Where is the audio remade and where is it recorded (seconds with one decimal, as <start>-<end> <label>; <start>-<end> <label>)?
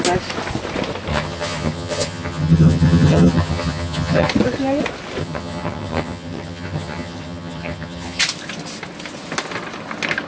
0.0-1.1 recorded; 1.1-4.3 remade; 4.3-5.2 recorded; 5.2-8.2 remade; 8.2-10.3 recorded